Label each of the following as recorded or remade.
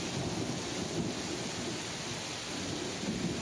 recorded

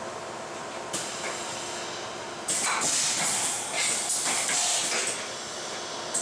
recorded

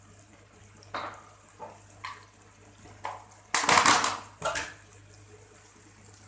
recorded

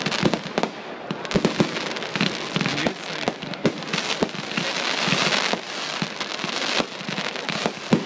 recorded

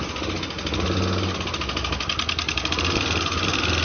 recorded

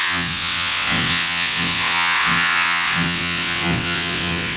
remade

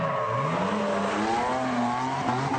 recorded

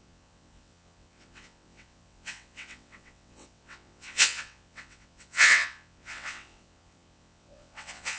remade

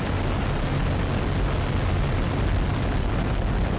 recorded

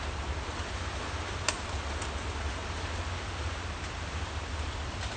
recorded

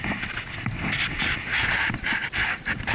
recorded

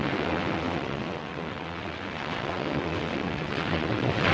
remade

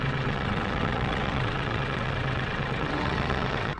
remade